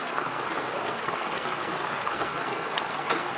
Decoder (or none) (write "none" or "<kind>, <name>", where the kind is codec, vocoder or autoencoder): codec, SNAC